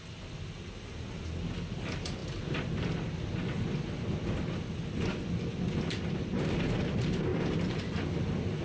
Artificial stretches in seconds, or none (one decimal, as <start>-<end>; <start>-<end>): none